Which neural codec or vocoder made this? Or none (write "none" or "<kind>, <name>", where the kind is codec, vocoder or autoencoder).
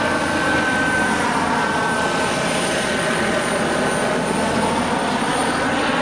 none